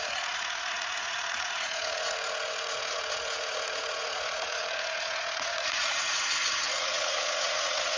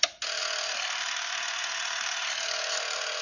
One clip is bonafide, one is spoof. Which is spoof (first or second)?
first